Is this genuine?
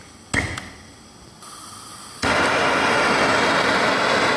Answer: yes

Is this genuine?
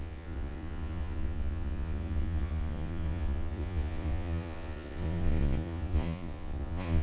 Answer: no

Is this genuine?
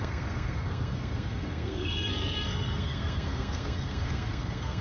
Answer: no